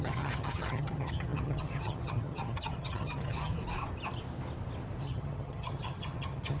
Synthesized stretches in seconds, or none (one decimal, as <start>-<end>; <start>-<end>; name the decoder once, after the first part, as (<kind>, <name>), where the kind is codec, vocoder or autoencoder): 0.0-3.5 (vocoder, HiFi-GAN); 5.0-6.6

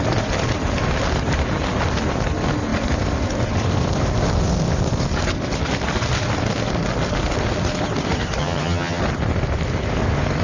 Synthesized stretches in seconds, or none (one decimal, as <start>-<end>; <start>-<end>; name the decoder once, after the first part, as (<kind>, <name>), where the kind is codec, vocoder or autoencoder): 8.4-9.0 (vocoder, HiFi-GAN)

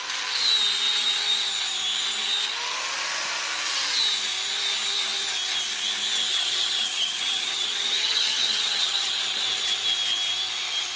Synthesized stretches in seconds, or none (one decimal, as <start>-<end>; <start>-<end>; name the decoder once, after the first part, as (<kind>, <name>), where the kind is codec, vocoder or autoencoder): 6.3-9.1 (vocoder, HiFi-GAN)

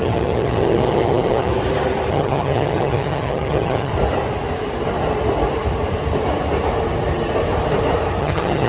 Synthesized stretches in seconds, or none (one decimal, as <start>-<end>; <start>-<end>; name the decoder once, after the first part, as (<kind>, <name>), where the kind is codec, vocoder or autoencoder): 0.0-1.5 (vocoder, HiFi-GAN); 2.1-3.9; 8.2-8.7

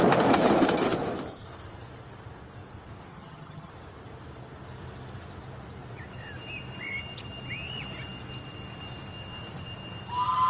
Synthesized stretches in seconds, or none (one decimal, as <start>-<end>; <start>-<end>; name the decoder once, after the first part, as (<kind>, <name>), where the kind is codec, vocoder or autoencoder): 3.1-3.7 (vocoder, HiFi-GAN)

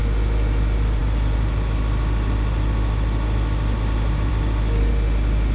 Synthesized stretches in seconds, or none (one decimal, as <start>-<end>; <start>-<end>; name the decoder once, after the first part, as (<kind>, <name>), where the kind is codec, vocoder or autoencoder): none